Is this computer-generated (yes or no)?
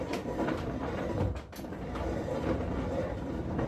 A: yes